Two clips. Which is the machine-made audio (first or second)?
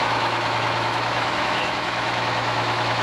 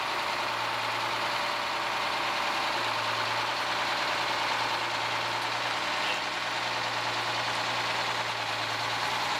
first